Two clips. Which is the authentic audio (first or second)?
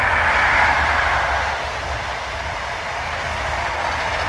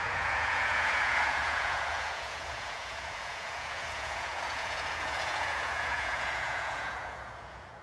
first